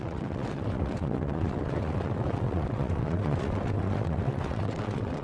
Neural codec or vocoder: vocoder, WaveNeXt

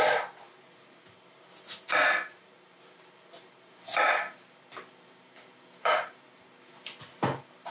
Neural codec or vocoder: none